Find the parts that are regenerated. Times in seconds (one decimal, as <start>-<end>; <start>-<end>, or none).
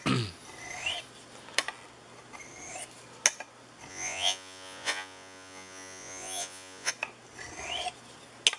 3.9-6.9